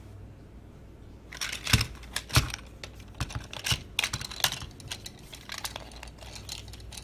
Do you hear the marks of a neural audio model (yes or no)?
no